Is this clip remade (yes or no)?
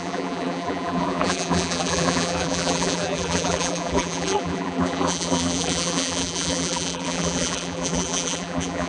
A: yes